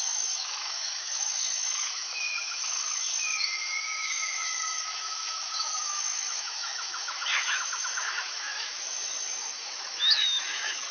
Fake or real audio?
fake